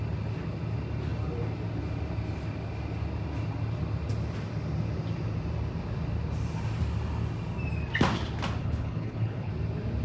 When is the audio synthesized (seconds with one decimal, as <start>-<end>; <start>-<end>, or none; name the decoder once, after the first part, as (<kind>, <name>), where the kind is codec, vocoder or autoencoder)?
8.6-9.5 (codec, HILCodec)

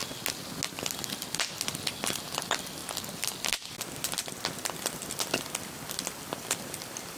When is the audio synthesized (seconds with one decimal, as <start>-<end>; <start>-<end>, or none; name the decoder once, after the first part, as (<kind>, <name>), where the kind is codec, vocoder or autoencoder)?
1.8-2.8 (vocoder, BigVGAN v2); 4.8-7.2

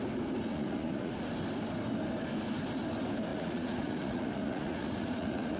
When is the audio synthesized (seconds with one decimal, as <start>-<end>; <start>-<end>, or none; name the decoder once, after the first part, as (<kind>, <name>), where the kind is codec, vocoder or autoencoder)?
0.5-1.1 (vocoder, Vocos); 3.3-5.6

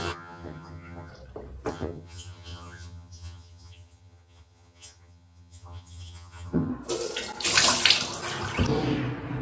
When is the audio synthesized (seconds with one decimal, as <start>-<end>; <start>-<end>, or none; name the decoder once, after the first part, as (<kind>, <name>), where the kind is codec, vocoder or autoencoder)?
0.0-1.1 (vocoder, HiFi-GAN); 1.7-6.7

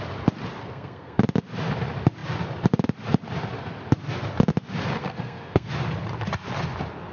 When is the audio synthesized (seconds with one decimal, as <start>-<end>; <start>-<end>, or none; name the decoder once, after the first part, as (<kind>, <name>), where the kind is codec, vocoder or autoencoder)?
0.6-1.2 (codec, SNAC); 5.0-5.7

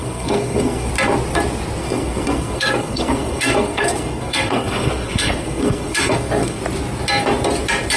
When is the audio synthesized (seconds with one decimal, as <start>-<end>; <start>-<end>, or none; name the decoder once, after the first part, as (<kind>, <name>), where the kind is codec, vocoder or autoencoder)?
0.0-0.9 (codec, SNAC); 1.8-6.6

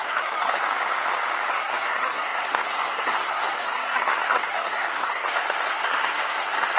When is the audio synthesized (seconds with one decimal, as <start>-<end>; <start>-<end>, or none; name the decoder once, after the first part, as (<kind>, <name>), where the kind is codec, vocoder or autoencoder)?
0.0-0.6 (codec, SNAC); 1.5-6.8